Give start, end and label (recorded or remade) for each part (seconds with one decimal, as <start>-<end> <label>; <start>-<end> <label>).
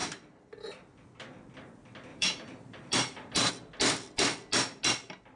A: 0.0-0.6 remade; 0.6-2.1 recorded; 2.1-3.5 remade; 3.5-5.4 recorded